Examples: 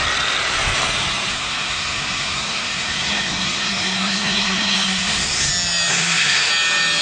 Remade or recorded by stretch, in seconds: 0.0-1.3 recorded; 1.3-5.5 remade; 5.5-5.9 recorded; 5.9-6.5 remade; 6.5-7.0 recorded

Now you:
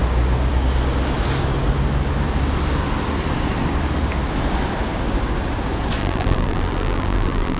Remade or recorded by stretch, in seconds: 0.0-6.0 recorded; 6.0-7.6 remade

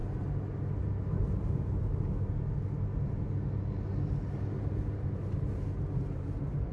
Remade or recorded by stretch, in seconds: 0.0-6.7 recorded

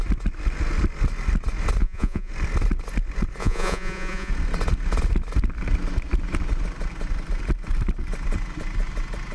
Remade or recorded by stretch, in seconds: 0.0-1.8 recorded; 1.8-2.3 remade; 2.3-3.4 recorded; 3.4-4.3 remade; 4.3-9.3 recorded

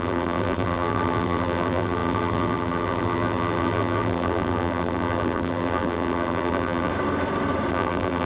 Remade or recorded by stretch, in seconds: 0.0-6.9 remade; 6.9-7.7 recorded; 7.7-8.3 remade

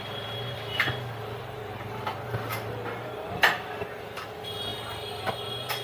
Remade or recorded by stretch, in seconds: 0.0-5.8 recorded